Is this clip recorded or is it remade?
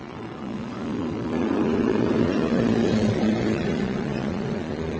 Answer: remade